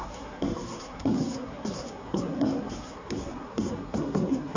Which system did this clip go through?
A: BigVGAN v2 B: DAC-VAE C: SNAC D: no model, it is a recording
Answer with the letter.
C